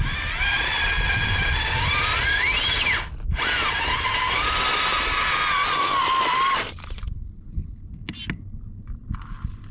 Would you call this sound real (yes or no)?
yes